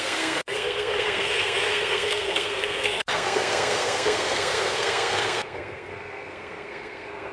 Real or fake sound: fake